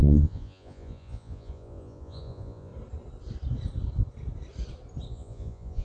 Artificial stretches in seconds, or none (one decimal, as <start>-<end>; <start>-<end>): 0.0-2.7; 5.1-5.8